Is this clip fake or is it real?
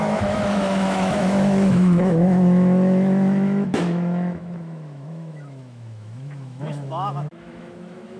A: fake